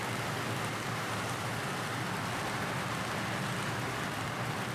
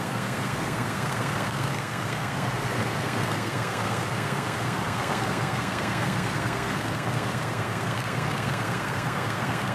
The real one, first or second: first